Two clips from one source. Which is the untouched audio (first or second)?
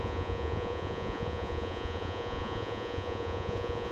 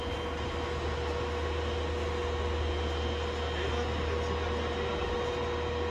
second